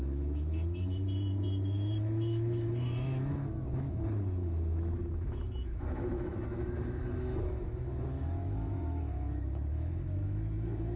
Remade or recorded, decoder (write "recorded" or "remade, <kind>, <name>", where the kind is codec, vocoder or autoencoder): remade, autoencoder, DAC-VAE